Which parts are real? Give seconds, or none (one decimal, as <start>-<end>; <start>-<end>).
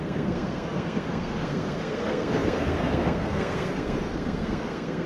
none